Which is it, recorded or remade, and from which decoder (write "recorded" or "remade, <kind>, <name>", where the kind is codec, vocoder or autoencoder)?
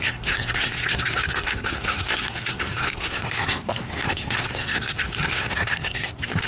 remade, codec, SNAC